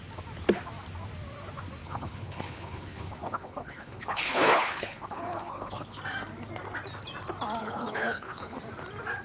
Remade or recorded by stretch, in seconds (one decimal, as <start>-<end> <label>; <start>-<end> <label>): 0.0-1.8 recorded; 1.8-6.0 remade; 6.0-7.6 recorded; 7.6-8.6 remade; 8.6-9.2 recorded